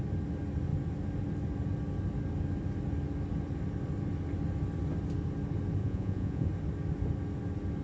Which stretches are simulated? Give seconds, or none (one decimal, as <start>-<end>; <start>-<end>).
5.8-6.5